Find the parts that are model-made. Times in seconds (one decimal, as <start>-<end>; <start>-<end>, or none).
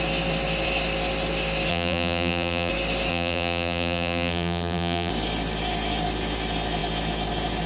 1.7-2.7; 3.1-5.1